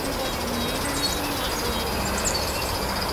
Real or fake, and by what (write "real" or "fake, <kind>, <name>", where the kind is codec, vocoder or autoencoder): real